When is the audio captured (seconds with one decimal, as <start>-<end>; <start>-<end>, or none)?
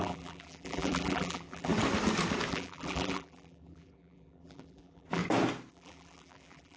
1.7-2.5; 5.2-5.7